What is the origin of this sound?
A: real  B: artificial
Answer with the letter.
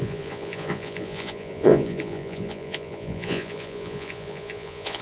B